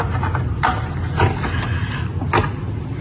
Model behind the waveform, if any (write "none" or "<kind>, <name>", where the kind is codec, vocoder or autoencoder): none